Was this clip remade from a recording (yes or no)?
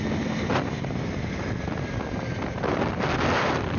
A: no